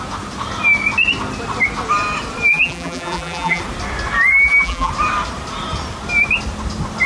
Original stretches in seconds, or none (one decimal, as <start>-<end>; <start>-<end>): 0.0-2.5; 3.6-4.3; 4.9-7.1

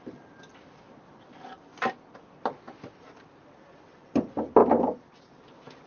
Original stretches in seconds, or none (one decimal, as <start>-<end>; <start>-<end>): 0.0-5.9

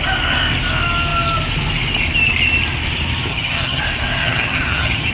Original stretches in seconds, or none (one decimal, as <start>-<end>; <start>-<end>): 0.0-3.3; 3.8-4.2

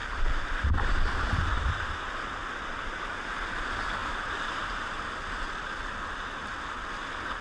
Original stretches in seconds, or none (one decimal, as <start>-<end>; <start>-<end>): 2.1-4.0; 5.1-7.4

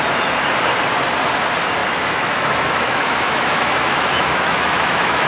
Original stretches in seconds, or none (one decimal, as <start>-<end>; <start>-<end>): 0.0-1.8